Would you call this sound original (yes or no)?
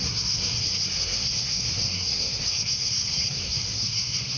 no